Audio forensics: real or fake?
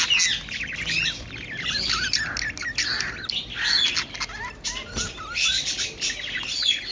real